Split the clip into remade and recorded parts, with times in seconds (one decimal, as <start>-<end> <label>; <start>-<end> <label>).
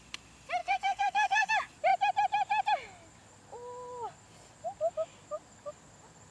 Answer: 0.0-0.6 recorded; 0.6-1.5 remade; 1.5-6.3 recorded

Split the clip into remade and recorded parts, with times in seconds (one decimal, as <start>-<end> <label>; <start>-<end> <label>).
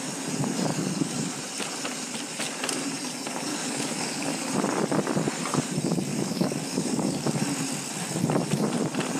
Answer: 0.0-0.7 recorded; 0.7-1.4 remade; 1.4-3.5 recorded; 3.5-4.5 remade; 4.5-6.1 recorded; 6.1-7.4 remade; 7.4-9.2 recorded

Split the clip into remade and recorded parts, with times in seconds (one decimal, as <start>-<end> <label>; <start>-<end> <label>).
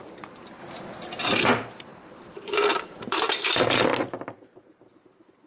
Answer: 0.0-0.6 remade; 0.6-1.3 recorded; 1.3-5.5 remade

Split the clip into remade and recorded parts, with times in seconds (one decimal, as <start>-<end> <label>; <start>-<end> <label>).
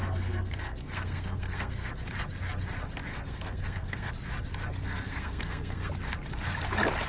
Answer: 0.0-1.9 remade; 1.9-3.1 recorded; 3.1-4.1 remade; 4.1-4.8 recorded; 4.8-5.9 remade; 5.9-7.1 recorded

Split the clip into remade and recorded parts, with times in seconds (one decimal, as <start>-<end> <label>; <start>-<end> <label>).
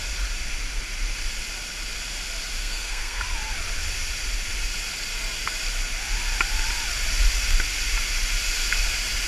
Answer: 0.0-2.6 recorded; 2.6-3.2 remade; 3.2-9.3 recorded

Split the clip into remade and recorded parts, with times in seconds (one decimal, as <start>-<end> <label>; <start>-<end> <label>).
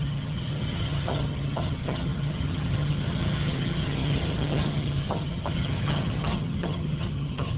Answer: 0.0-7.6 remade